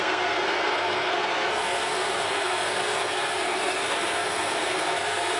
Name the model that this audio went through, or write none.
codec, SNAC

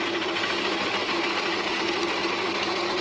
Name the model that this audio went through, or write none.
none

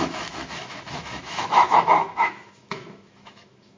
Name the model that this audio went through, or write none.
autoencoder, DAC-VAE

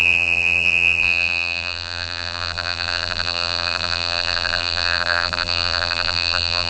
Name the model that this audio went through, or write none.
vocoder, BigVGAN v2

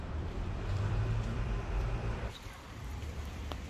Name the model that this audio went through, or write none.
vocoder, BigVGAN v2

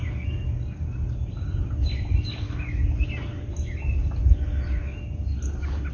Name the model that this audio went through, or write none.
none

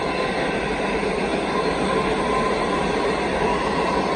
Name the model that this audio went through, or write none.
none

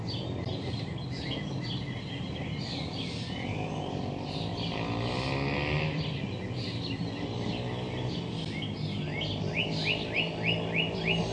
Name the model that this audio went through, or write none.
none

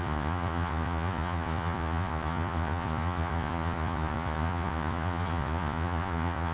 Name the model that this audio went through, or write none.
vocoder, Vocos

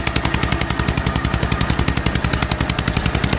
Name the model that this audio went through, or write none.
none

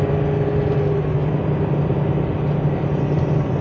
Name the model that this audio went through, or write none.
none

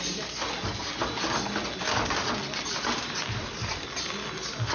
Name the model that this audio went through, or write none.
none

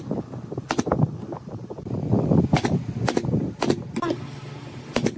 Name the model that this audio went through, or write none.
none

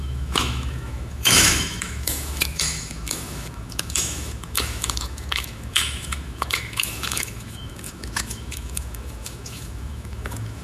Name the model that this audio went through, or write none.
autoencoder, DAC-VAE